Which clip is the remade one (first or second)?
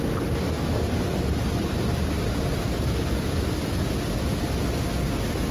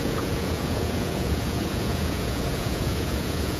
second